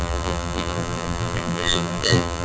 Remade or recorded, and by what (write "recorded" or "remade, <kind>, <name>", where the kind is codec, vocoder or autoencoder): remade, vocoder, BigVGAN v2